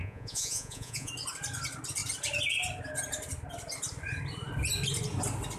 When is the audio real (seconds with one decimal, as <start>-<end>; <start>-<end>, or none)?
1.1-5.6